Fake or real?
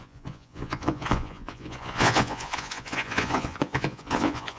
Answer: fake